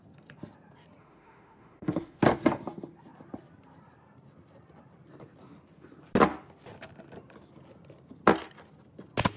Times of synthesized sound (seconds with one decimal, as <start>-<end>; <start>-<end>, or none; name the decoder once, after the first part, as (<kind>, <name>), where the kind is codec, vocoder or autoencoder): 1.0-2.2 (autoencoder, DAC-VAE)